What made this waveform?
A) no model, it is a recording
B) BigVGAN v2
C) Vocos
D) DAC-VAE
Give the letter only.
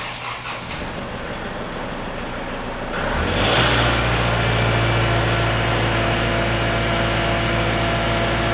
A